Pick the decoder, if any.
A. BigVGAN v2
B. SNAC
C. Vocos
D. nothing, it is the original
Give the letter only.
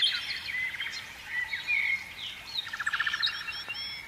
D